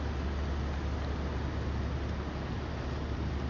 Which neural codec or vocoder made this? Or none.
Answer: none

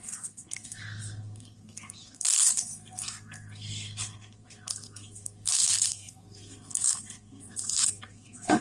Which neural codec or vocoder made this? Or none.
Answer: codec, SNAC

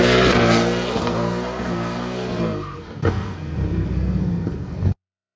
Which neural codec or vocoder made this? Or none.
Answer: codec, SNAC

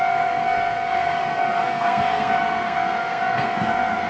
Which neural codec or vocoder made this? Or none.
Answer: codec, SNAC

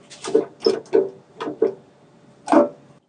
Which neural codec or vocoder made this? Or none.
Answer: none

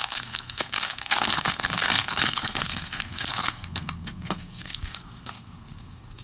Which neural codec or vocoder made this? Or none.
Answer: codec, SNAC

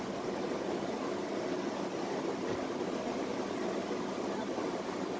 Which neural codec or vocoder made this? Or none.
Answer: none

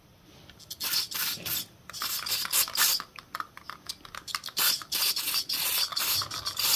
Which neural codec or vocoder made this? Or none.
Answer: none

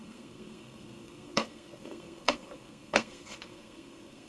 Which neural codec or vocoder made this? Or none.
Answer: codec, SNAC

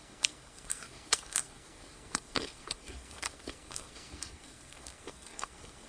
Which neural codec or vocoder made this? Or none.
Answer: codec, SNAC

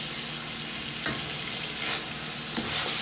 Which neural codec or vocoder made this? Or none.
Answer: none